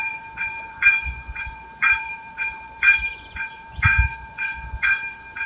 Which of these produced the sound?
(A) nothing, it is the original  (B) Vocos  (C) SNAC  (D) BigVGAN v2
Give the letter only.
B